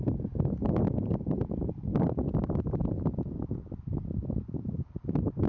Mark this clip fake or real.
real